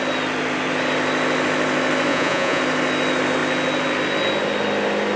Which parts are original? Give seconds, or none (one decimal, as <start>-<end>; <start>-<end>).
0.0-2.1; 2.6-5.2